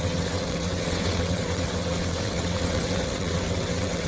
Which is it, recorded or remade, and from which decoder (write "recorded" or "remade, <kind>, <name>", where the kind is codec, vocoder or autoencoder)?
remade, vocoder, WaveNeXt